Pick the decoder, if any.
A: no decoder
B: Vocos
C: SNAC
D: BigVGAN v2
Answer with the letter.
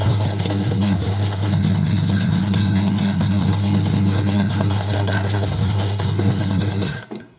C